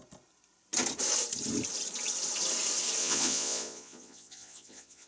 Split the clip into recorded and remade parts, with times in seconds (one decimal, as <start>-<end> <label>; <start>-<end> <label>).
0.0-3.0 recorded; 3.0-5.1 remade